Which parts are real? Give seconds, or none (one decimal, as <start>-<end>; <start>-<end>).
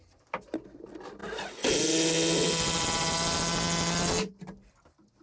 0.0-5.2